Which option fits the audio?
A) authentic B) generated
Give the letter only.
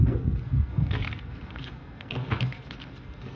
B